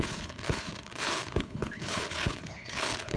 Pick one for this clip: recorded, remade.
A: remade